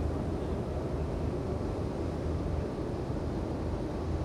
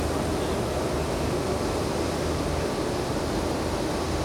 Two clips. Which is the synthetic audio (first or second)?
first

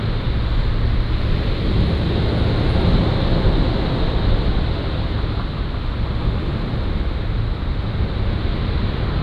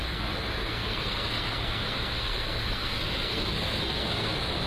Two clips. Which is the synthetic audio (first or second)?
second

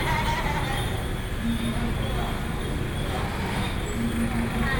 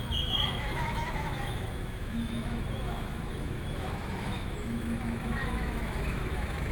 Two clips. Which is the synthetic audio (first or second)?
second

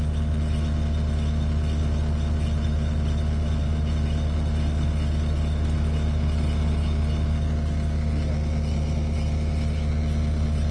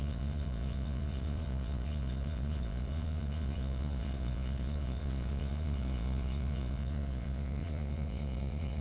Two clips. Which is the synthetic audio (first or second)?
second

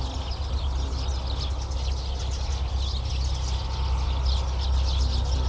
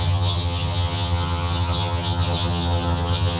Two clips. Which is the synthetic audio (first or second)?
second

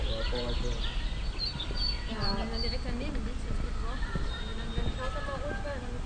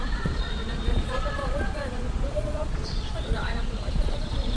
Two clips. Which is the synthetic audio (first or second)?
second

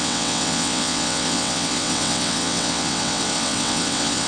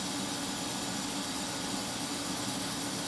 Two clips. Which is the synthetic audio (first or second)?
first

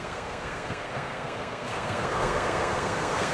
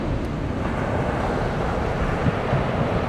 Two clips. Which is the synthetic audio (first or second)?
first